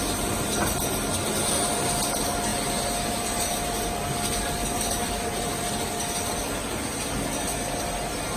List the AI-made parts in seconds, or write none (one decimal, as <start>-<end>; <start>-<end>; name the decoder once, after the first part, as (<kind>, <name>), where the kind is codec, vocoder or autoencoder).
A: none